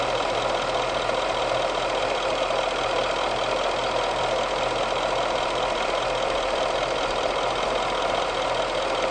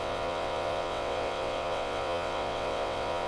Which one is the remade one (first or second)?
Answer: second